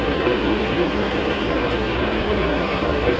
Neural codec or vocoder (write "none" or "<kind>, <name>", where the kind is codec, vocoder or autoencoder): codec, SNAC